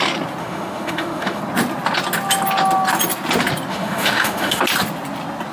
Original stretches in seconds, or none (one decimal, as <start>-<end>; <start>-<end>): 0.0-0.4; 1.4-3.7; 4.6-5.5